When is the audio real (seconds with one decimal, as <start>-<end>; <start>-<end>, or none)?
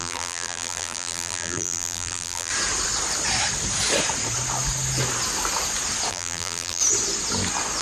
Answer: 2.5-6.1; 6.8-7.8